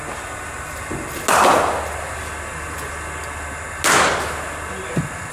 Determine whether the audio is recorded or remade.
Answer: recorded